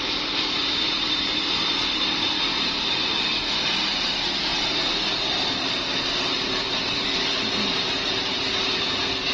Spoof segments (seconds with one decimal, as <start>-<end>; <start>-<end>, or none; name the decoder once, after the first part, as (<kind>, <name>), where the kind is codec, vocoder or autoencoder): 0.0-9.3 (vocoder, BigVGAN v2)